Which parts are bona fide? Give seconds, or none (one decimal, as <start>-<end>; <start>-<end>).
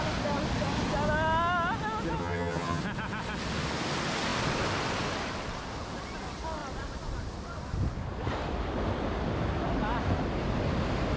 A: 0.0-2.2; 2.8-11.2